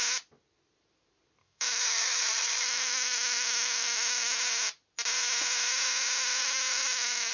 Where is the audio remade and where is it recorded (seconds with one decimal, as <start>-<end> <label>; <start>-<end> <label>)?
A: 0.0-1.4 recorded; 1.4-4.4 remade; 4.4-6.4 recorded; 6.4-7.3 remade